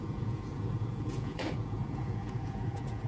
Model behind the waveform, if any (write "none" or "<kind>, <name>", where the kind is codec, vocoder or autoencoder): vocoder, Vocos